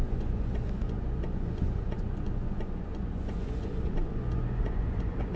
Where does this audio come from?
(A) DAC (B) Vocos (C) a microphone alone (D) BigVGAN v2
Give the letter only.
B